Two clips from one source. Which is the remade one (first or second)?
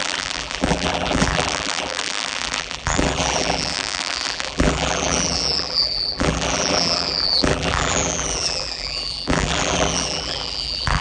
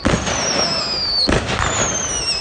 first